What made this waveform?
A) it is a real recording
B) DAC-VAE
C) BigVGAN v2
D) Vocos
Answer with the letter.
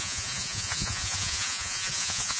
D